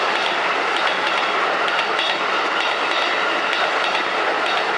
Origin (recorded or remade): recorded